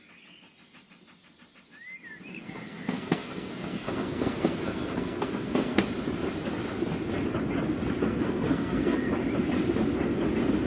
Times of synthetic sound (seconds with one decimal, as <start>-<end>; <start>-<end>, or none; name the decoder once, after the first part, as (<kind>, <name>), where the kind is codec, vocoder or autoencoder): 2.3-5.8 (codec, SNAC); 8.0-9.1